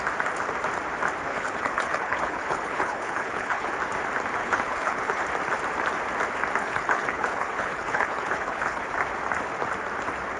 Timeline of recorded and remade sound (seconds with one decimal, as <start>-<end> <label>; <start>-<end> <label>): 0.0-1.3 recorded; 1.3-3.7 remade; 3.7-4.4 recorded; 4.4-5.2 remade; 5.2-6.6 recorded; 6.6-8.8 remade; 8.8-10.4 recorded